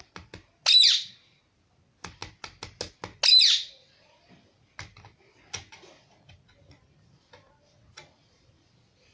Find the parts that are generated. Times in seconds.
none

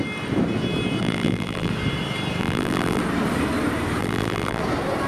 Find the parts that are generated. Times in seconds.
1.0-1.7 (vocoder, BigVGAN v2); 2.4-3.0; 4.0-4.6

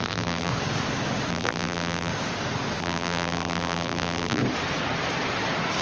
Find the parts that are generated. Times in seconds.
0.0-0.5 (vocoder, BigVGAN v2); 1.3-2.1; 2.8-4.4

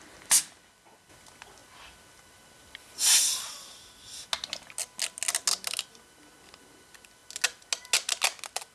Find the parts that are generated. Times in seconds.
none